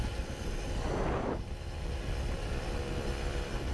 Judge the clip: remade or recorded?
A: recorded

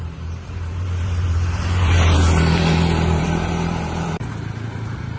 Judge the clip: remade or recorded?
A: remade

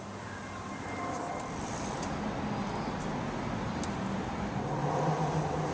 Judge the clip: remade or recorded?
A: recorded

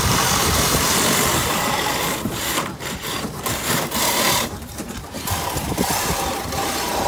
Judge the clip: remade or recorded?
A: remade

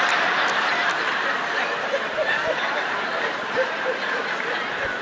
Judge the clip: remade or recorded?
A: remade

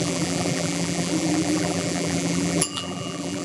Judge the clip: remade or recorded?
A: remade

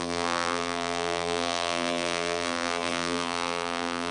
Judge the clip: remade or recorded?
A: remade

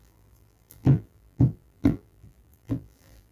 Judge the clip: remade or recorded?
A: remade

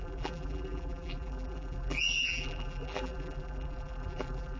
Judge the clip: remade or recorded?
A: remade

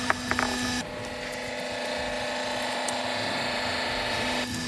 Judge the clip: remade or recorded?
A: recorded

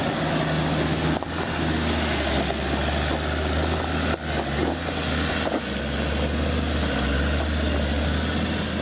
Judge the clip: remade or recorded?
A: recorded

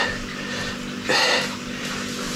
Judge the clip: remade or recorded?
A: recorded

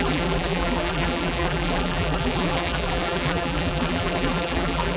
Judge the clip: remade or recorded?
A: remade